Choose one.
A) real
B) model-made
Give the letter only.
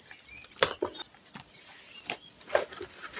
A